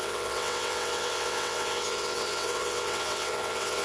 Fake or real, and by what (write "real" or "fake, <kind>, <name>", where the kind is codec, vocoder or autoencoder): fake, vocoder, WaveNeXt